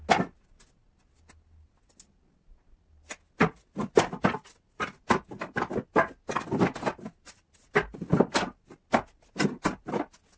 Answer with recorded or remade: recorded